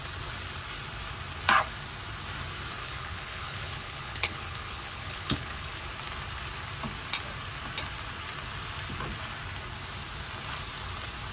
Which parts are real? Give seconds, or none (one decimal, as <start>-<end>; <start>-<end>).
0.0-2.8; 5.7-11.3